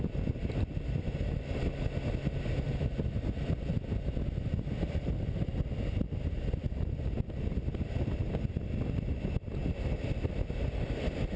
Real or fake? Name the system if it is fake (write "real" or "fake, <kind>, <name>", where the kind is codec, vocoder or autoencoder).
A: real